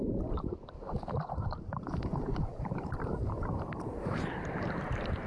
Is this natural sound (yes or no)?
no